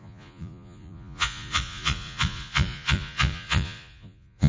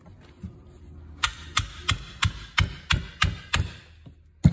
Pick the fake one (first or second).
first